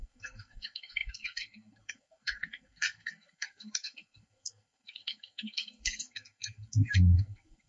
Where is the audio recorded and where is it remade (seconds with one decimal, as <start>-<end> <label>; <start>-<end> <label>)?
0.0-7.7 remade